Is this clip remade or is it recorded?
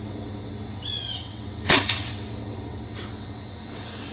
remade